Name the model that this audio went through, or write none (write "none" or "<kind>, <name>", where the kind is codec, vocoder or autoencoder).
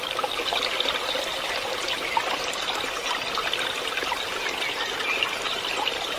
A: none